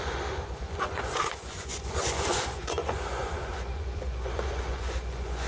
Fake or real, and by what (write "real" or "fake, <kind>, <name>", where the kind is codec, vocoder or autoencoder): fake, vocoder, Vocos